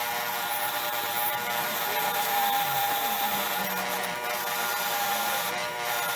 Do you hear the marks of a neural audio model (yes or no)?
yes